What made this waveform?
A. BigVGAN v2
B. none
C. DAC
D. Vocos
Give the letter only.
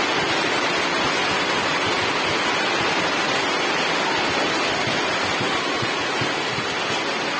B